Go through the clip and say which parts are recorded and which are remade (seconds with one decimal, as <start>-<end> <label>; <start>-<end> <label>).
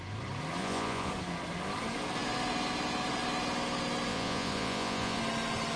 0.0-0.6 recorded; 0.6-1.1 remade; 1.1-4.1 recorded; 4.1-5.2 remade; 5.2-5.8 recorded